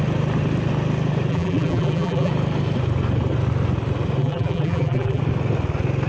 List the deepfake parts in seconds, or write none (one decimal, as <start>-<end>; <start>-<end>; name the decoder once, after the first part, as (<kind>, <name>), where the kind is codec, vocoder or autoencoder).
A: 1.3-2.3 (vocoder, BigVGAN v2); 4.2-5.2